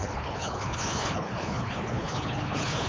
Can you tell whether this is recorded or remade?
remade